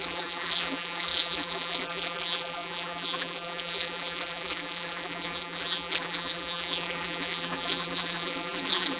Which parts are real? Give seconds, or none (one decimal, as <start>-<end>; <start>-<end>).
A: none